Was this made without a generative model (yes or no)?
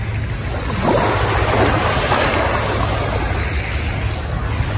yes